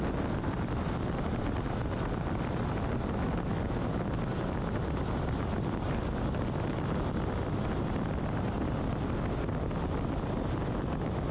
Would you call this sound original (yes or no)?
yes